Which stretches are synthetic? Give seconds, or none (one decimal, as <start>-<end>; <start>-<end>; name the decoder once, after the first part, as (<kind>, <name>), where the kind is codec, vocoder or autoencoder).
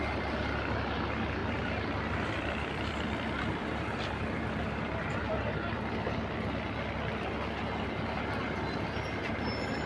1.4-6.3 (vocoder, BigVGAN v2)